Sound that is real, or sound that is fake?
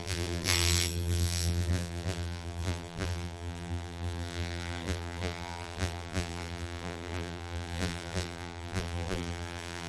fake